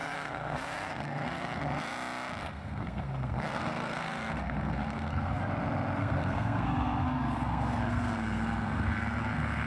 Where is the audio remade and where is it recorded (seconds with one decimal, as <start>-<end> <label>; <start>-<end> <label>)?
0.0-1.6 remade; 1.6-2.4 recorded; 2.4-5.4 remade; 5.4-6.0 recorded; 6.0-9.7 remade